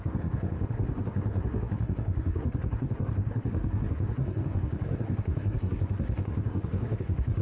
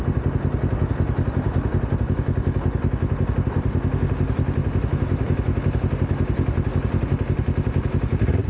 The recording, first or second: second